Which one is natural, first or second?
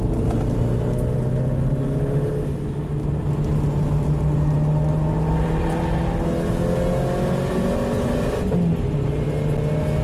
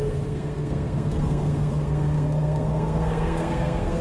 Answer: first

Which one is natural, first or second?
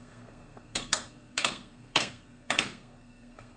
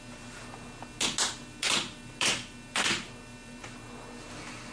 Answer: second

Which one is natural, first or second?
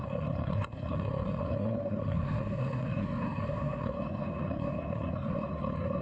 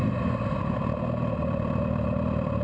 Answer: second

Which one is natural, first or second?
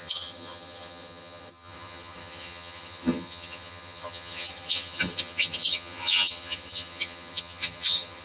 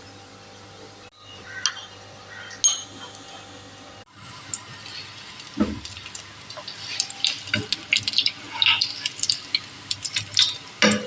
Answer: second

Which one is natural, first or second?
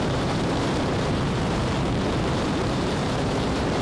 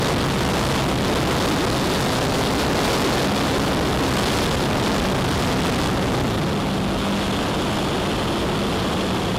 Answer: second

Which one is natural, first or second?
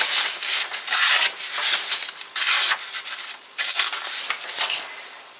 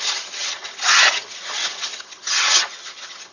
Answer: first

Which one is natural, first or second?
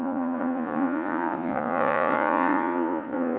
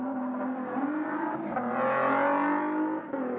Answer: second